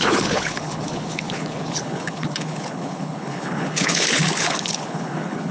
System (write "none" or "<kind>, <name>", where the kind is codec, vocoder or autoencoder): codec, HILCodec